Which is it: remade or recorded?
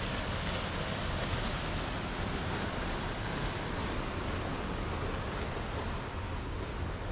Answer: recorded